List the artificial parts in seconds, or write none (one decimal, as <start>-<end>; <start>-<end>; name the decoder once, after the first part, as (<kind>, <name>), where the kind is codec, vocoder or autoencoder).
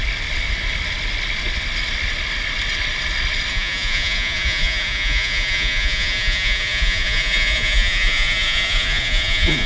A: 3.5-9.7 (vocoder, Vocos)